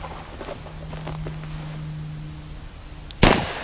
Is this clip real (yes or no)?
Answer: yes